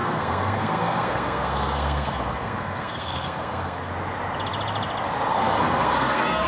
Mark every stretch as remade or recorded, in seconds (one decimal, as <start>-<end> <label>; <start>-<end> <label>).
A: 0.0-3.9 remade; 3.9-5.3 recorded; 5.3-6.5 remade